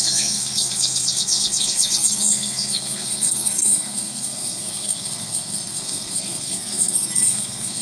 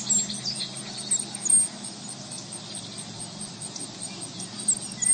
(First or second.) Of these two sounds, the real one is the second